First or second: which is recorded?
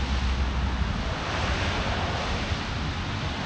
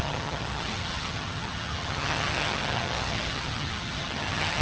first